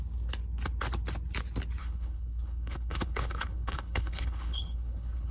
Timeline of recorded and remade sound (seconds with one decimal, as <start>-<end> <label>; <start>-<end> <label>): 0.0-1.8 recorded; 1.8-5.3 remade